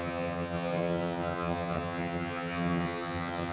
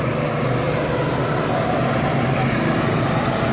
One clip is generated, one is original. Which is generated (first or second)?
first